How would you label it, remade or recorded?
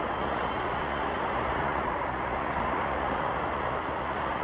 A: remade